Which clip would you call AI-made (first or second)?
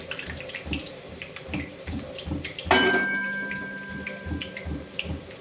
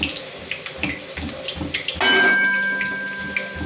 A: first